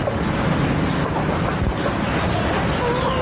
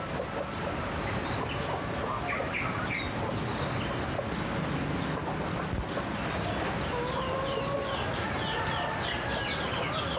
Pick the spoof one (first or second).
first